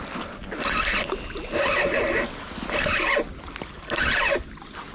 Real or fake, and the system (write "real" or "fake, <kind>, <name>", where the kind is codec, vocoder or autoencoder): real